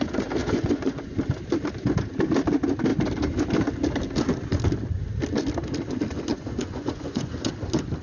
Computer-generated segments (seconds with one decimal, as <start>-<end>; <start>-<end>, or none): 0.4-1.1; 6.3-7.5